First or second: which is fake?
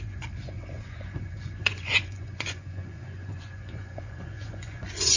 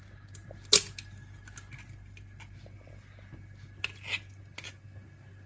first